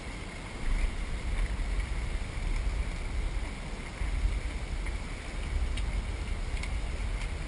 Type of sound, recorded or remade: recorded